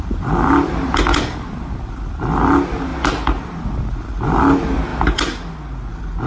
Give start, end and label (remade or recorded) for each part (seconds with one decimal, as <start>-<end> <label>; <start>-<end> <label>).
0.0-6.3 recorded